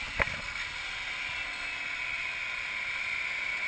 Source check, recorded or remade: recorded